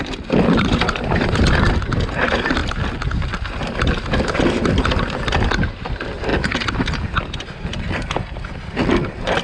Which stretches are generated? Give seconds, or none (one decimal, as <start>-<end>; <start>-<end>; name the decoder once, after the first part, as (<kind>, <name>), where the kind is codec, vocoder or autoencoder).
none